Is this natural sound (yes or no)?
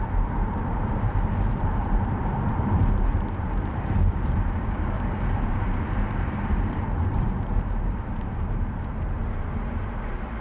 no